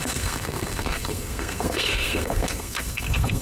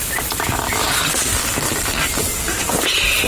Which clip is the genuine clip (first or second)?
second